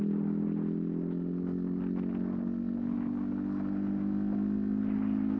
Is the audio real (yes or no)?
yes